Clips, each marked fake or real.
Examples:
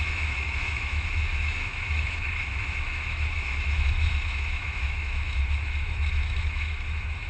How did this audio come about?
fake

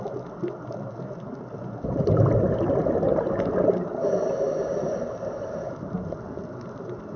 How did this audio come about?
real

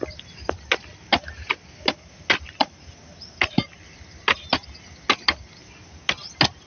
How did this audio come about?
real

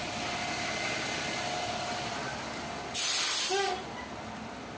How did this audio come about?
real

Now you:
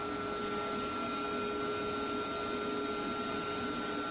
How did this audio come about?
real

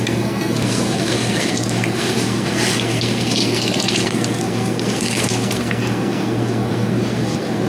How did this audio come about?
fake